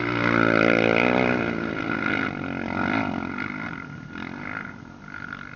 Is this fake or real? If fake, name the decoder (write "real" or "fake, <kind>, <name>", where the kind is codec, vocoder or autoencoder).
real